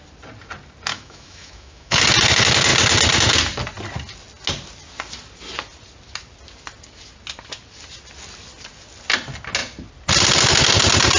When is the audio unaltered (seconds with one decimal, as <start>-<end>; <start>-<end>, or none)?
0.0-0.9; 2.0-11.2